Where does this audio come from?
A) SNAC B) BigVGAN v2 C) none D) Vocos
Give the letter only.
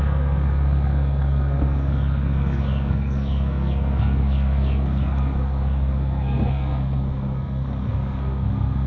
A